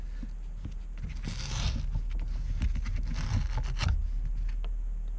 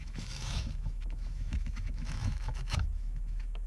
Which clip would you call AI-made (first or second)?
second